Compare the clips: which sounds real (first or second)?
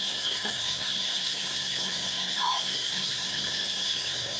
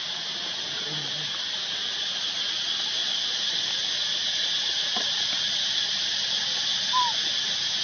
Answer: second